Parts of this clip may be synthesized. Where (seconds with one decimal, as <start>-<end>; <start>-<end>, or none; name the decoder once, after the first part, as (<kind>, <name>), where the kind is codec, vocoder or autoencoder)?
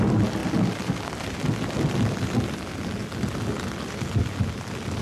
none